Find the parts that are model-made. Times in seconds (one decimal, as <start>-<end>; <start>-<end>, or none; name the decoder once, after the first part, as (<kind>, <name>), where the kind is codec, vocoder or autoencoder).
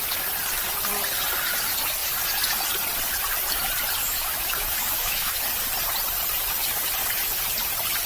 4.0-5.4 (autoencoder, DAC-VAE)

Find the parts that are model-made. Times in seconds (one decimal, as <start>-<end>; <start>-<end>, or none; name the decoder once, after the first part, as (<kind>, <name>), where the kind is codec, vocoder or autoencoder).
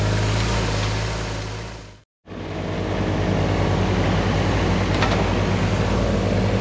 none